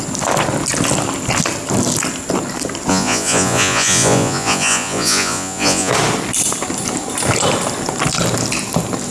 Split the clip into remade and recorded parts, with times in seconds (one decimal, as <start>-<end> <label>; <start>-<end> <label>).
0.0-2.9 recorded; 2.9-5.9 remade; 5.9-9.1 recorded